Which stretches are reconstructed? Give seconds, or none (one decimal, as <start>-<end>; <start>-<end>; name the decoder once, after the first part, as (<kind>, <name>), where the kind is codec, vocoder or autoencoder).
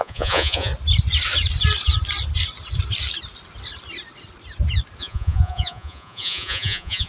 0.0-0.7 (vocoder, Vocos); 5.0-7.1